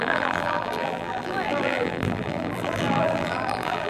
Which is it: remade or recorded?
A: remade